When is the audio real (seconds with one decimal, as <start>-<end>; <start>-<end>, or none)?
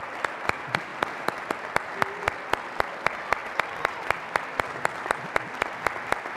0.0-3.4; 4.4-6.4